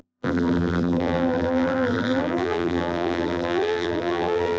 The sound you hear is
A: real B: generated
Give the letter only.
B